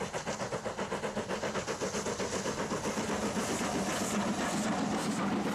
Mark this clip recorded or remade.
recorded